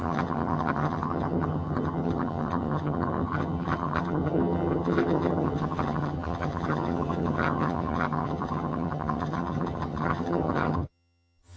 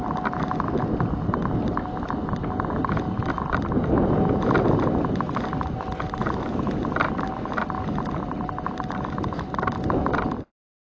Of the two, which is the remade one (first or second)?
first